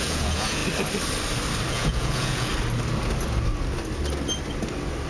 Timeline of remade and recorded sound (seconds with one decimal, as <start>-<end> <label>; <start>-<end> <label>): 0.0-0.6 remade; 0.6-1.7 recorded; 1.7-2.5 remade; 2.5-5.1 recorded